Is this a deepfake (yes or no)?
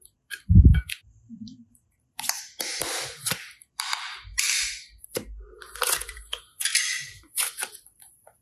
yes